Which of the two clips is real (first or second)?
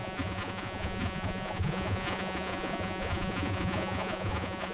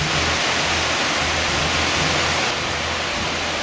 second